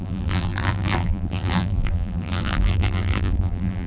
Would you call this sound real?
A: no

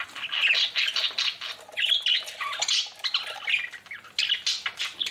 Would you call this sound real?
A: yes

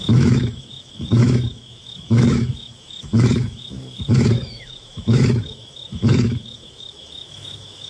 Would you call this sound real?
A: no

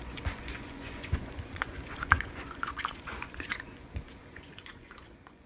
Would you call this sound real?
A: no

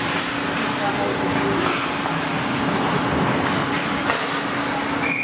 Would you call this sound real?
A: yes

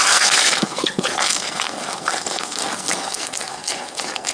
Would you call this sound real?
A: no